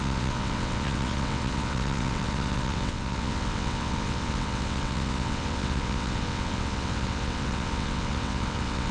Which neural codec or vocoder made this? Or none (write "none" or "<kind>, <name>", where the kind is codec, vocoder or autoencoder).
vocoder, WaveNeXt